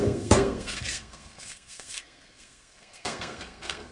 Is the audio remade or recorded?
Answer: remade